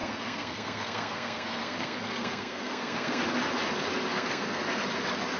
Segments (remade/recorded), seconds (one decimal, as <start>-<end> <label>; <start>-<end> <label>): 0.0-3.2 remade; 3.2-4.1 recorded; 4.1-4.6 remade; 4.6-5.4 recorded